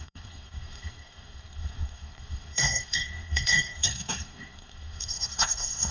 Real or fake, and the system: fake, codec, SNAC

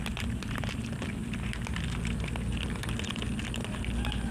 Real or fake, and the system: real